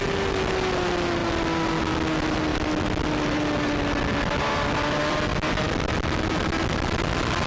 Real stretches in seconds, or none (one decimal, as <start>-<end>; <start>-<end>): 0.0-7.5